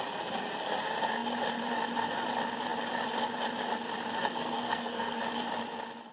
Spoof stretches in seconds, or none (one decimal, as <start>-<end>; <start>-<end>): 4.2-5.2